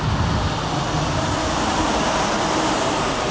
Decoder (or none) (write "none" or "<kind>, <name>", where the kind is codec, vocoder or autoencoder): none